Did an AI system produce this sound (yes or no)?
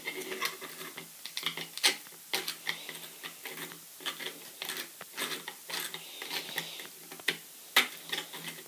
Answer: no